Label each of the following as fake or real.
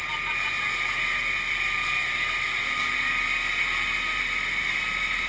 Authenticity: real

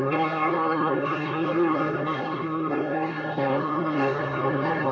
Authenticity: fake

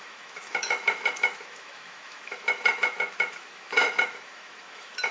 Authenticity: fake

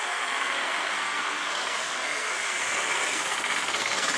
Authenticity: fake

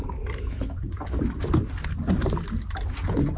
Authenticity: real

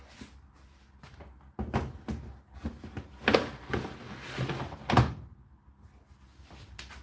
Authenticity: real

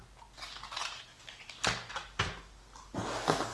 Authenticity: real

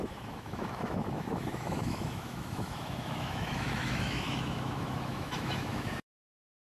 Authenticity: fake